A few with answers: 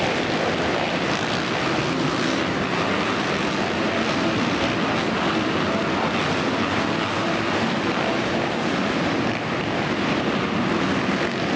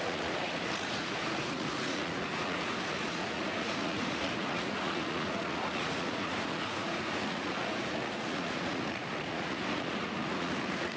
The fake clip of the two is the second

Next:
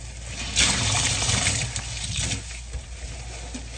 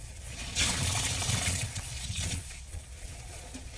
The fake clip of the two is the second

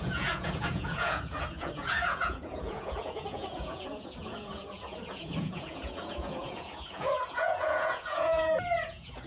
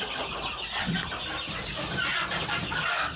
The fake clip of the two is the first